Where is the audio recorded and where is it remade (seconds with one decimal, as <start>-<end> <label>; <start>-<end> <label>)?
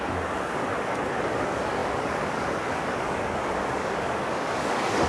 0.0-5.1 remade